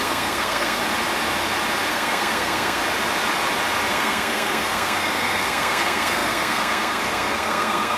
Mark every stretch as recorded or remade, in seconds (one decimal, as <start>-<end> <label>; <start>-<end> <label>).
0.0-0.8 remade; 0.8-1.9 recorded; 1.9-2.8 remade; 2.8-3.9 recorded; 3.9-8.0 remade